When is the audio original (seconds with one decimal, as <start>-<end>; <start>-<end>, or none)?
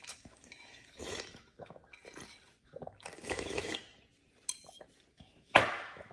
1.8-2.6; 3.8-5.1